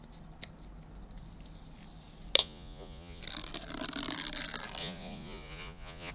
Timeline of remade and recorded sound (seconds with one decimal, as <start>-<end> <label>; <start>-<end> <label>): 0.0-2.4 recorded; 2.4-3.2 remade; 3.2-4.8 recorded; 4.8-6.1 remade